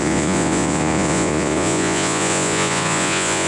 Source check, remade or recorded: remade